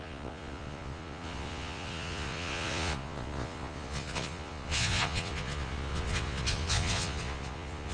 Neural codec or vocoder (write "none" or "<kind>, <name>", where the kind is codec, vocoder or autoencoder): vocoder, Vocos